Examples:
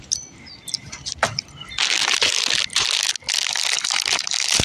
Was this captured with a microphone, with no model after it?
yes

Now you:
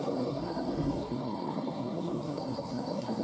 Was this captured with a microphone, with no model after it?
no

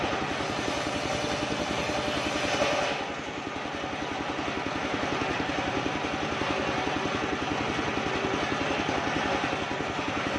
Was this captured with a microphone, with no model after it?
yes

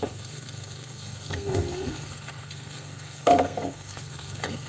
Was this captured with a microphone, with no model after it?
no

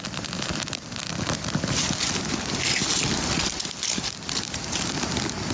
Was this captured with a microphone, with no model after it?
yes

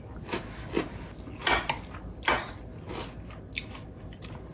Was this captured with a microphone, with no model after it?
yes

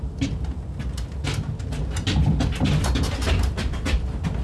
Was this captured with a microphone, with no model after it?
yes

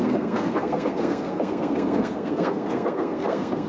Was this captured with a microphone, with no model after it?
no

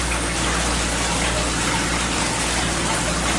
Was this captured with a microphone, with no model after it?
yes